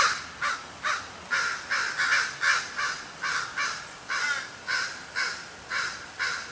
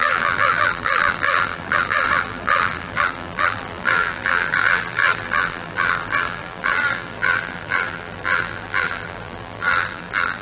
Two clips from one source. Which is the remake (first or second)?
second